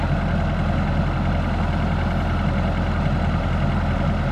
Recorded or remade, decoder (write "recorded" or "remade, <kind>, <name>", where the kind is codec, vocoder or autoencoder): recorded